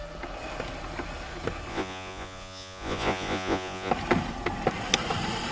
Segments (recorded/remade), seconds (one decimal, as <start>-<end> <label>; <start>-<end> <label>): 0.0-1.7 recorded; 1.7-3.9 remade; 3.9-5.5 recorded